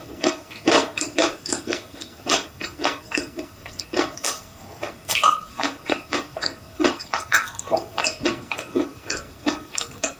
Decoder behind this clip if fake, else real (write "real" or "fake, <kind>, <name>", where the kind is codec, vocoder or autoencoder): fake, codec, SNAC